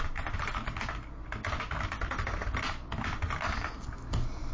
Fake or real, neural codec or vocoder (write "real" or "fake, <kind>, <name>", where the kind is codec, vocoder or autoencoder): real